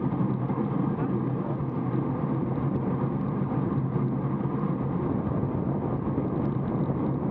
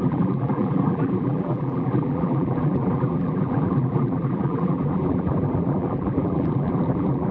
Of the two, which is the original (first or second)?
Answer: first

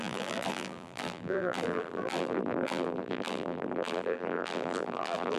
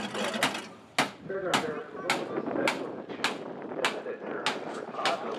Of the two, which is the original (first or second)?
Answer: second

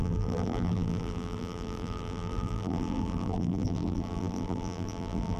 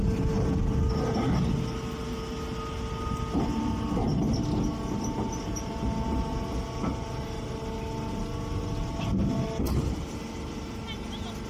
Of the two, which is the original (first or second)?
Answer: second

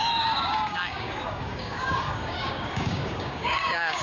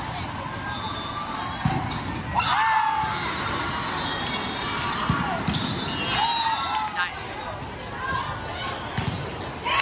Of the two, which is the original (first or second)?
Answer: second